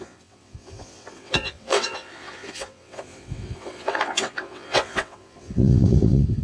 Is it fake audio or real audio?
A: fake